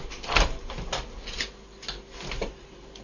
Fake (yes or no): no